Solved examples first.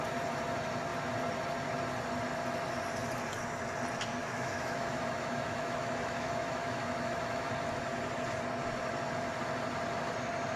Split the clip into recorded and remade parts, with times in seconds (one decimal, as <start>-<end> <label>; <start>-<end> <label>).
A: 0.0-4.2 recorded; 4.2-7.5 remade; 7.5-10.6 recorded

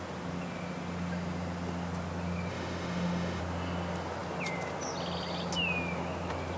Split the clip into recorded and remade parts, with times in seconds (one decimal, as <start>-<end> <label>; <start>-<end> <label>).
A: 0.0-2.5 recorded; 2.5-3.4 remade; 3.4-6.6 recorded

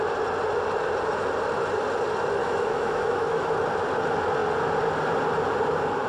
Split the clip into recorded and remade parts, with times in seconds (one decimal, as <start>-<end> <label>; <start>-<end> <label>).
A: 0.0-2.4 recorded; 2.4-3.5 remade; 3.5-6.1 recorded

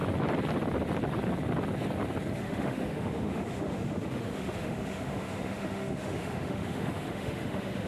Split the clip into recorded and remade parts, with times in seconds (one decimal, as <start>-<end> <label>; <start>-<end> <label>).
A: 0.0-2.4 recorded; 2.4-7.9 remade

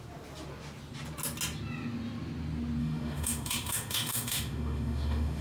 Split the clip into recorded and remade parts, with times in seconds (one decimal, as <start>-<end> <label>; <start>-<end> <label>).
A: 0.0-2.8 recorded; 2.8-5.4 remade

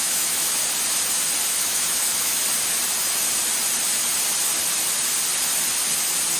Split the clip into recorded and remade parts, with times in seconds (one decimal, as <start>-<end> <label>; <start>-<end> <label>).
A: 0.0-0.6 remade; 0.6-1.6 recorded; 1.6-2.4 remade; 2.4-6.4 recorded

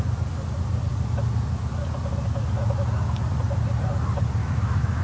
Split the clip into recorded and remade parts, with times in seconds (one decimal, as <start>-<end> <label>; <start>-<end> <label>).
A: 0.0-4.4 recorded; 4.4-5.0 remade